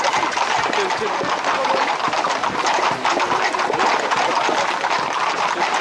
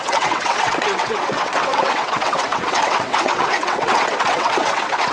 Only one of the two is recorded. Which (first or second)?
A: first